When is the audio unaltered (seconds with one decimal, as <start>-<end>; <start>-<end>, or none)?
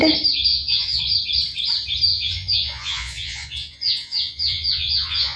0.0-0.5; 1.0-2.1